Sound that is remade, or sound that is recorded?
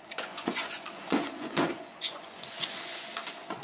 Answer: remade